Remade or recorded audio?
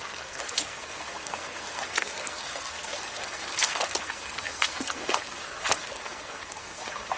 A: remade